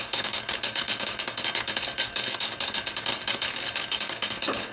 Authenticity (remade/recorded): remade